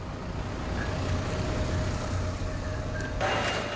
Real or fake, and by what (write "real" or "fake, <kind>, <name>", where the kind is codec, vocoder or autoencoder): real